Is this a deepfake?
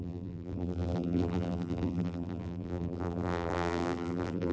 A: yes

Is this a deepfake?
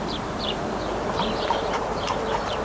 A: yes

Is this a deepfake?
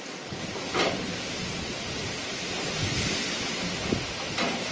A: no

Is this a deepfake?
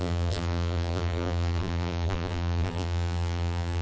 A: yes